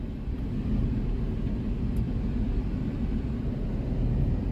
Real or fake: real